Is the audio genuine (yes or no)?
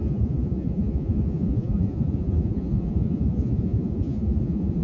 no